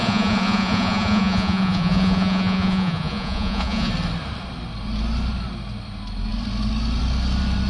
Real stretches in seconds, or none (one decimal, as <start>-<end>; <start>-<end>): 3.9-7.7